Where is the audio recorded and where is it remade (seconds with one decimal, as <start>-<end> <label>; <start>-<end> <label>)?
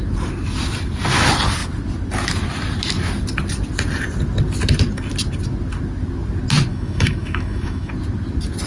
0.0-6.7 recorded; 6.7-7.9 remade; 7.9-8.7 recorded